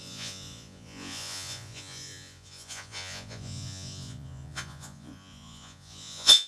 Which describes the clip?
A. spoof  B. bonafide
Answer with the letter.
A